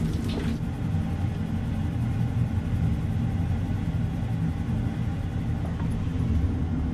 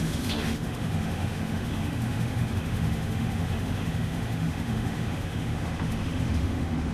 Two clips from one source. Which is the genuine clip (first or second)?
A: first